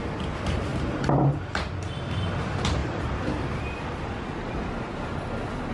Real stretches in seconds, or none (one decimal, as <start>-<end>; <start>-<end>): 0.0-5.7